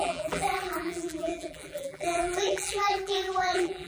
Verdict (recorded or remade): remade